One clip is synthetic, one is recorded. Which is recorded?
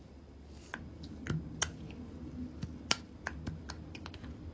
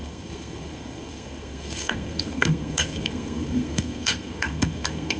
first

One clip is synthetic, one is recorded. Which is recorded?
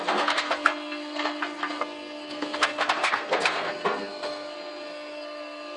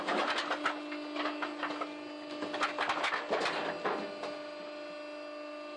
second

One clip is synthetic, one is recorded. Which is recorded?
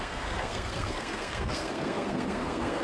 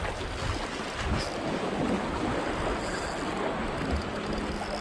second